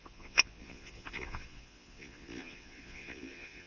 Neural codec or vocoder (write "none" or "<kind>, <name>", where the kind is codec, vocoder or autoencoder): vocoder, Vocos